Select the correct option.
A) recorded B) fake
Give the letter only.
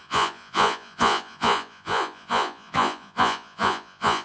B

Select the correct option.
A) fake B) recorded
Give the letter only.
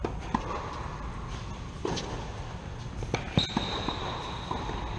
B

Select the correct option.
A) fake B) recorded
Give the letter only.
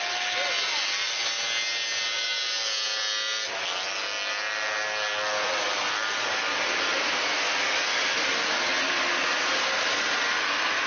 B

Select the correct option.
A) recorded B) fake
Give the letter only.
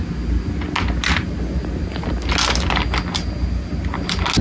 A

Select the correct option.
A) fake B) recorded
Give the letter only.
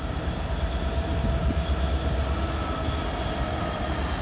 B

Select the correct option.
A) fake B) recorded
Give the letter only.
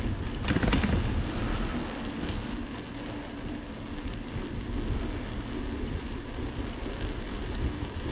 B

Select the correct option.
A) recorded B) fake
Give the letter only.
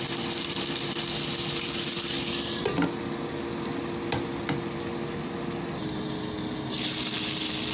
A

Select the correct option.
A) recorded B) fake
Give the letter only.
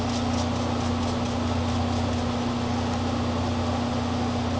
A